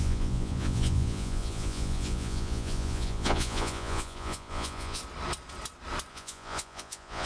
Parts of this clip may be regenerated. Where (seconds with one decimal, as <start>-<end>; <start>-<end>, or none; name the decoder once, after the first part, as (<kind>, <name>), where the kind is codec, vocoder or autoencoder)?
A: 0.0-5.0 (vocoder, Vocos); 6.1-7.3